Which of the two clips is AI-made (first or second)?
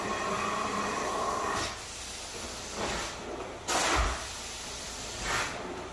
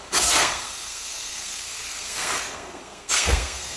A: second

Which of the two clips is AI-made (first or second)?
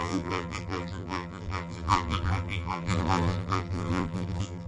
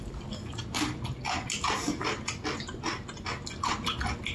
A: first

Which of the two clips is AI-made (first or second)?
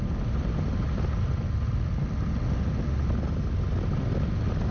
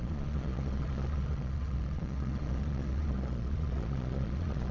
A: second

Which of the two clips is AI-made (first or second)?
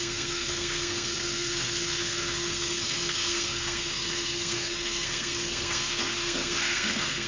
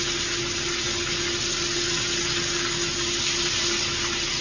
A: first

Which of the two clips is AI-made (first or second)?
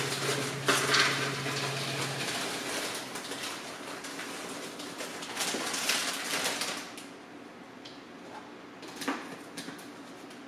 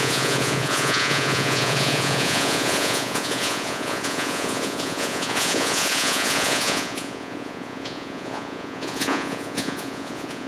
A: second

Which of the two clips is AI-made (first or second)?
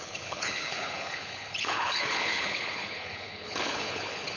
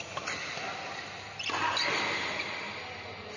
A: first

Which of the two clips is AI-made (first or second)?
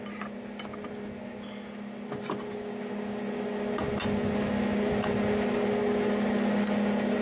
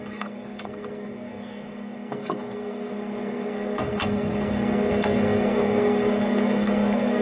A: second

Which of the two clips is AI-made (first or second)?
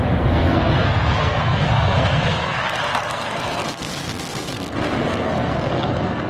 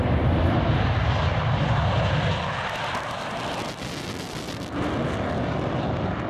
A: first